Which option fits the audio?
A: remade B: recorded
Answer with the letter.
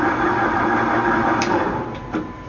A